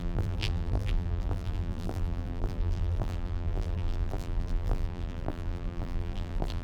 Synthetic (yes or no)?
yes